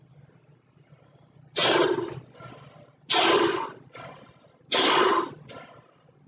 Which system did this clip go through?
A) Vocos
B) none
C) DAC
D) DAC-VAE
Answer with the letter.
B